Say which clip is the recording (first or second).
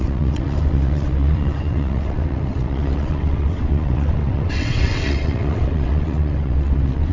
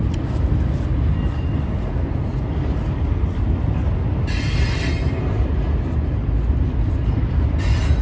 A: second